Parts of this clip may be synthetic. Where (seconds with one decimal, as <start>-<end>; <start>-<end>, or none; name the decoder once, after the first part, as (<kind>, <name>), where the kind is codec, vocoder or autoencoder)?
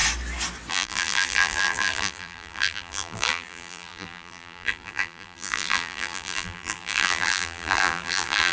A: 0.7-8.5 (vocoder, BigVGAN v2)